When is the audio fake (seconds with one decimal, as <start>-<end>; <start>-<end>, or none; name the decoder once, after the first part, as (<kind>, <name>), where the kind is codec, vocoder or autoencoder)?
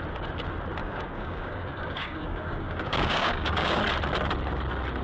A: 0.8-3.8 (codec, DAC)